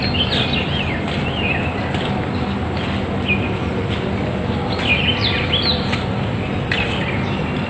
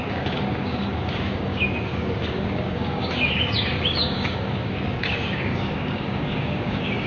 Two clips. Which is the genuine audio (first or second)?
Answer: first